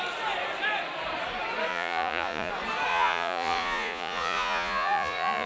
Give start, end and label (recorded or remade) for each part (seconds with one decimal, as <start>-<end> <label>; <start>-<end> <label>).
0.0-1.7 recorded; 1.7-2.5 remade; 2.5-2.9 recorded; 2.9-5.5 remade